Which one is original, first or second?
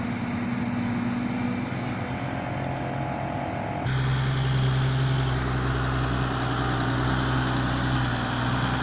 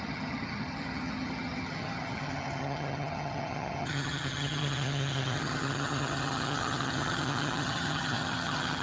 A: first